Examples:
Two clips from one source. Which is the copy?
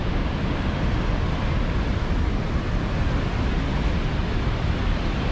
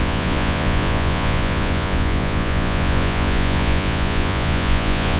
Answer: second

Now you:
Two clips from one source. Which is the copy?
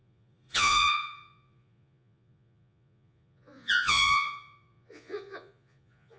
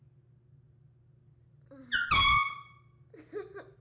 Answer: first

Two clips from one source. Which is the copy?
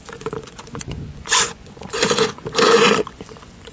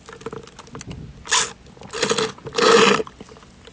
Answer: first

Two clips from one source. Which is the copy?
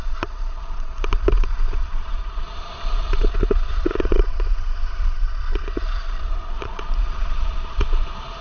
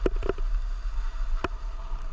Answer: first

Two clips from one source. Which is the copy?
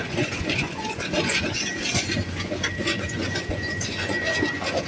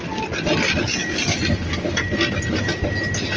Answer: first